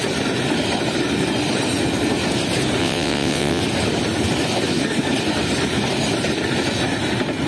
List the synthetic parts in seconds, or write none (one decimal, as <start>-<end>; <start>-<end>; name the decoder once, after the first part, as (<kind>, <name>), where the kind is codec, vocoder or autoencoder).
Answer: 2.8-3.6 (vocoder, WaveNeXt)